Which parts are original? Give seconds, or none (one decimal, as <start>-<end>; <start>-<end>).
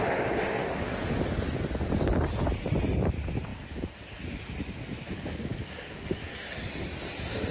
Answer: 0.0-0.6; 1.2-5.5; 6.2-7.5